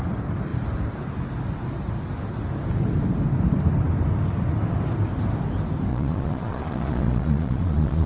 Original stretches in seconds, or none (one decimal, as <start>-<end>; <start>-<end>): 0.0-5.9